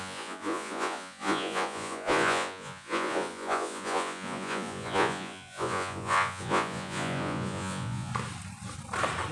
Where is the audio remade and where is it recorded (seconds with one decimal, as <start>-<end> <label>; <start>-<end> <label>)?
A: 0.0-8.1 remade; 8.1-9.3 recorded

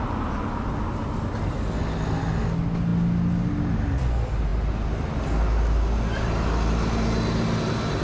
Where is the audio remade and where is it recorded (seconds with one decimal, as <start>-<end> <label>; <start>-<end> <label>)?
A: 0.0-8.0 recorded

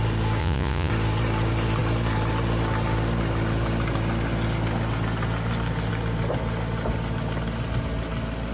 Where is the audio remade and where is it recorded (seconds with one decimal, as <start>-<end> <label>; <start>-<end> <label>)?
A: 0.0-0.4 recorded; 0.4-0.9 remade; 0.9-8.5 recorded

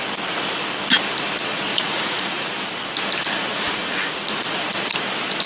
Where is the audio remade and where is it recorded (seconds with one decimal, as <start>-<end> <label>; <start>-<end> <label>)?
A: 0.0-1.7 recorded; 1.7-2.5 remade; 2.5-3.5 recorded; 3.5-4.6 remade; 4.6-5.5 recorded

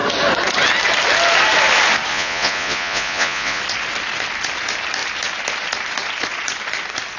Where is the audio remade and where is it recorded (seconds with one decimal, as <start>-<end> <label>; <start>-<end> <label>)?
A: 0.0-2.1 recorded; 2.1-3.6 remade; 3.6-7.2 recorded